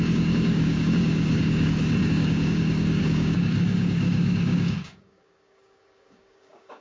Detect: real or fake fake